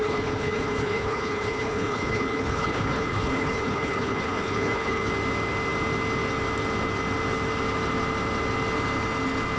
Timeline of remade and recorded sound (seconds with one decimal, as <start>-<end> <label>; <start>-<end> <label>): 0.0-5.1 remade; 5.1-9.6 recorded